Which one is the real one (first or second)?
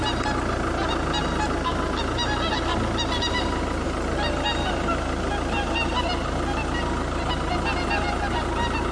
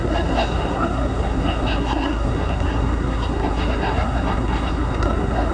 first